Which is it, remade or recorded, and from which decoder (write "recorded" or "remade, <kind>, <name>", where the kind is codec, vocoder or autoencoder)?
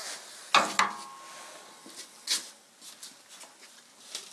recorded